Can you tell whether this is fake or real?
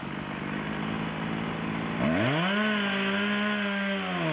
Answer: real